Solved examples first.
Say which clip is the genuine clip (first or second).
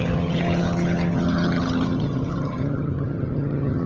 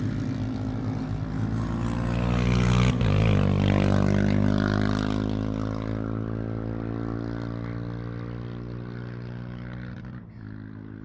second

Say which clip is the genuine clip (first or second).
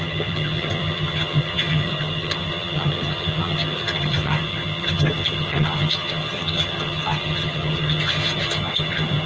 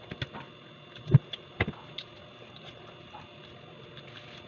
second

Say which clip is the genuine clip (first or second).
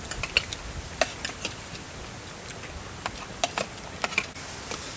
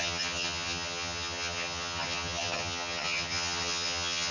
first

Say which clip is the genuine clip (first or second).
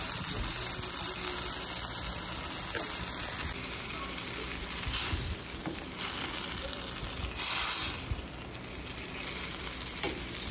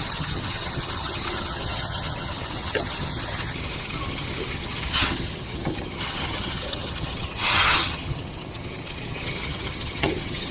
first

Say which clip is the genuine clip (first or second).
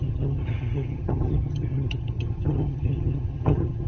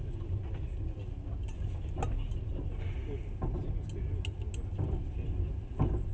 second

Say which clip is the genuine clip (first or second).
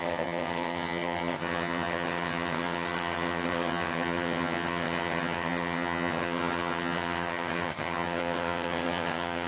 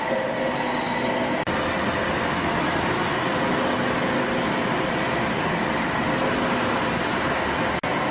second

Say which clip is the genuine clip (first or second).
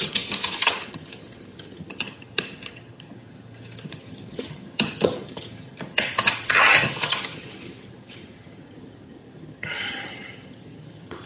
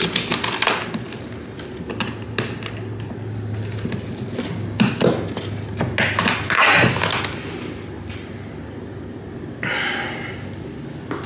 second